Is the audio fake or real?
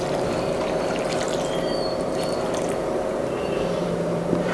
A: fake